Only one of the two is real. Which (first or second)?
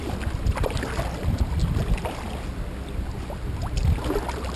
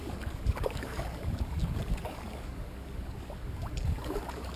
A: first